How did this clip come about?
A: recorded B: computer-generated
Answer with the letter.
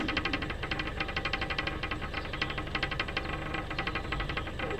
A